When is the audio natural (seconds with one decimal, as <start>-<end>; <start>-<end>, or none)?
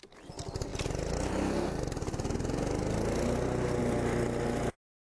0.0-5.2